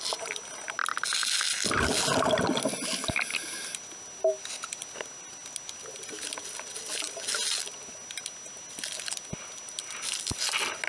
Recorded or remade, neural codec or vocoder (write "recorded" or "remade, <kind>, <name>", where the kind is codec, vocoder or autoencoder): recorded